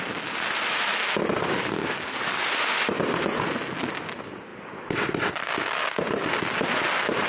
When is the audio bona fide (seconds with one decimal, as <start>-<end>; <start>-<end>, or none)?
0.0-7.3